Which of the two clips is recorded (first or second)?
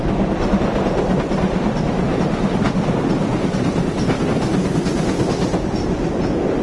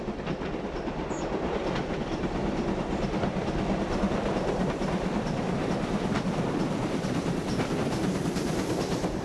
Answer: first